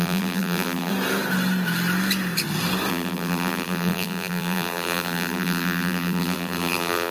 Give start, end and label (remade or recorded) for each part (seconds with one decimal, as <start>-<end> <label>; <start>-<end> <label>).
0.0-0.9 remade; 0.9-2.9 recorded; 2.9-7.1 remade